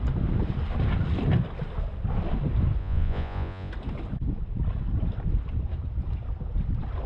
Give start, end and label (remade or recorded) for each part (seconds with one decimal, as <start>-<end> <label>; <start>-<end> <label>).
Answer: 0.0-2.8 recorded; 2.8-3.7 remade; 3.7-7.1 recorded